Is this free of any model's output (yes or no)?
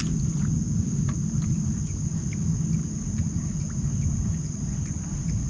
yes